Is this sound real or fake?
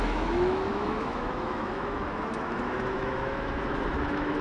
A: fake